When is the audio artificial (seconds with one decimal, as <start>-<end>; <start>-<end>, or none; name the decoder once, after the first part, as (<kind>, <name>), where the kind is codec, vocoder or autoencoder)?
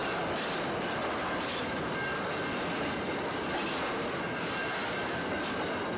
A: 0.0-3.1 (vocoder, BigVGAN v2)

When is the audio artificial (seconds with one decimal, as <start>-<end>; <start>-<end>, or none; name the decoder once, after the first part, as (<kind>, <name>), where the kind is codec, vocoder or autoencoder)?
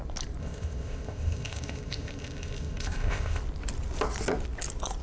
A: 0.4-3.4 (codec, ZipCodec)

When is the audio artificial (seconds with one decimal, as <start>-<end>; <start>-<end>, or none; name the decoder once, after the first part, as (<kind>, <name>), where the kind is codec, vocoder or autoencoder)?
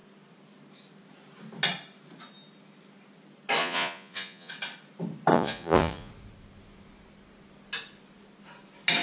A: 3.6-4.5 (vocoder, Vocos); 5.3-6.1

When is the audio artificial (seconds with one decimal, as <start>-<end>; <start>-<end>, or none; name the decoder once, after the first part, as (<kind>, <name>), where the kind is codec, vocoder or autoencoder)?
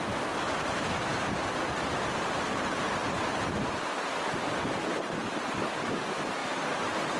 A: none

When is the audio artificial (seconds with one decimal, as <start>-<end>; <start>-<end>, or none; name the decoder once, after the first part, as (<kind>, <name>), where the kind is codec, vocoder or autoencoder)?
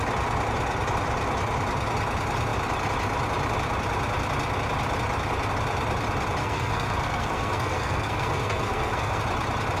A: 6.4-9.2 (codec, SNAC)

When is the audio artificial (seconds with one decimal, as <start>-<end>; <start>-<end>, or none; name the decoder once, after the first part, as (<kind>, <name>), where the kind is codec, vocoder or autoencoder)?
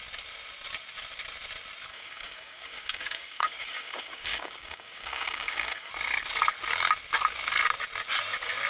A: 1.9-5.9 (codec, DAC)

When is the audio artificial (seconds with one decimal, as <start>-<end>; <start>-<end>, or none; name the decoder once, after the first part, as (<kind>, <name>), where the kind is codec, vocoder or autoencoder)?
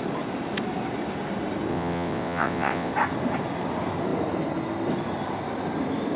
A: 1.7-2.9 (vocoder, WaveNeXt)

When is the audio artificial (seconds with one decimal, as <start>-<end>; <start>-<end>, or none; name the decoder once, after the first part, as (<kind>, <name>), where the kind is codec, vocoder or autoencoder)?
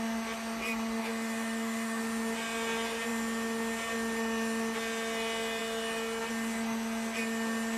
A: 1.0-2.0 (autoencoder, DAC-VAE)